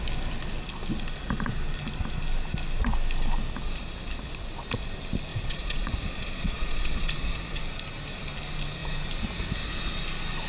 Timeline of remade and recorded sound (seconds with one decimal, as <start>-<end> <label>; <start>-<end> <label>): 0.0-5.3 recorded; 5.3-7.6 remade; 7.6-10.5 recorded